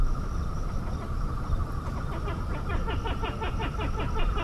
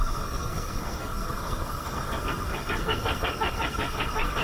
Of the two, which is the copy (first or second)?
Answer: second